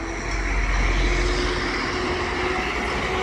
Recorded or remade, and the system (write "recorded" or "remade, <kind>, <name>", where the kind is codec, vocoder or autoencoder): recorded